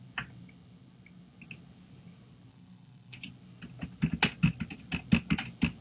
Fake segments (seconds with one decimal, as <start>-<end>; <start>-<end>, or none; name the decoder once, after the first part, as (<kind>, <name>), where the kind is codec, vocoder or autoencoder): 2.5-3.2 (codec, SNAC)